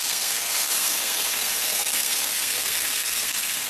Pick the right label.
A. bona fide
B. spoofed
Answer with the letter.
B